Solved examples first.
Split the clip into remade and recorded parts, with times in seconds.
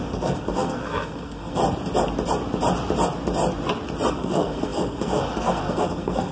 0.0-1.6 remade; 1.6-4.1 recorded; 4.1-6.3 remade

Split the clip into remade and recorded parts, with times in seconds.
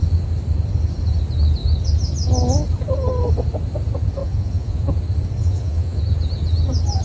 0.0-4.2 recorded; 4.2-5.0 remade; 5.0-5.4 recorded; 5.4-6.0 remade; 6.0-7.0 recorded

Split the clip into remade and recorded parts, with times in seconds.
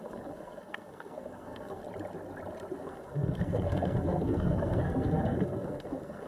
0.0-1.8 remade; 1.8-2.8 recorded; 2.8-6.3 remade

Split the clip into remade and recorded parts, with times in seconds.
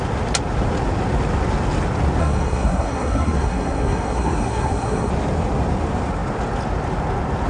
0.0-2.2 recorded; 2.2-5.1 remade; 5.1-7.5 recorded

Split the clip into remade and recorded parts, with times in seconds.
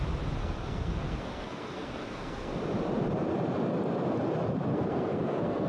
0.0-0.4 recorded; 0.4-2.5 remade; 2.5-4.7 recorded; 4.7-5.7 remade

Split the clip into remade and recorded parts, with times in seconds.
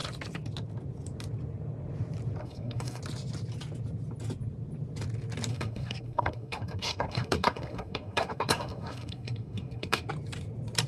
0.0-2.4 recorded; 2.4-3.0 remade; 3.0-5.5 recorded; 5.5-10.1 remade; 10.1-10.9 recorded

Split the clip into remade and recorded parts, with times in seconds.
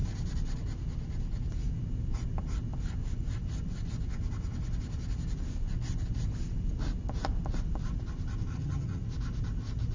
0.0-8.5 recorded; 8.5-9.0 remade; 9.0-9.9 recorded